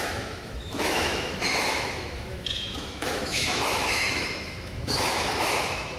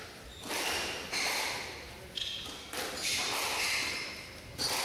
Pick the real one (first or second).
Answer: second